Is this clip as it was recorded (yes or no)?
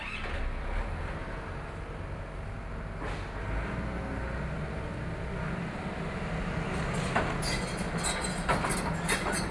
yes